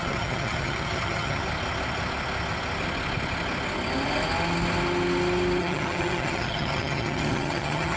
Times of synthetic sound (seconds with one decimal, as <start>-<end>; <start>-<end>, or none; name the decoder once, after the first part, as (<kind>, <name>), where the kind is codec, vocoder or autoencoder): 0.0-1.4 (vocoder, HiFi-GAN); 5.6-8.0